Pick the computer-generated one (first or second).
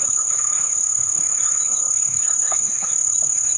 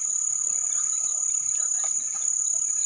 first